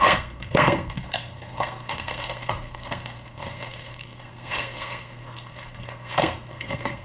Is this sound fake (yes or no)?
yes